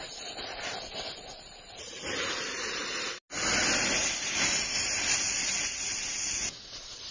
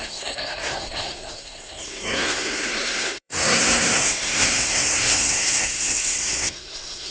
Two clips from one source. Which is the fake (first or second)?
second